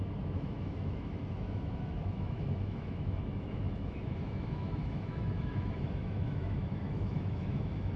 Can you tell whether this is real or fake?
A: fake